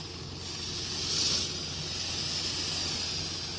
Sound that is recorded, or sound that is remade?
recorded